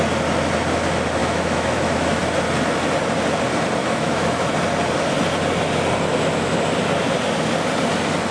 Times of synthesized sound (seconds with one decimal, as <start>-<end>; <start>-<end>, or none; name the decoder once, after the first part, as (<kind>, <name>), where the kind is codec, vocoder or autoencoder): 1.2-2.2 (autoencoder, DAC-VAE); 3.8-4.5